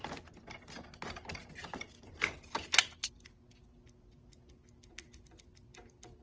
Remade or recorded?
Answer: recorded